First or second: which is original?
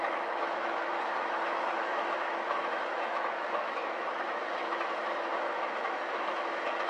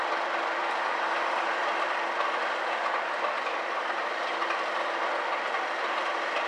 second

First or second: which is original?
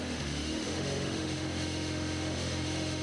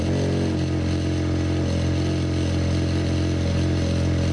second